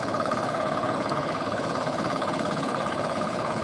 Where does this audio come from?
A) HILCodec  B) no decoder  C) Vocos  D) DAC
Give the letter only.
A